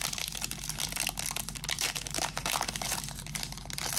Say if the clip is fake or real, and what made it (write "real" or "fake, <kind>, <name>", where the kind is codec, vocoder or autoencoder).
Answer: real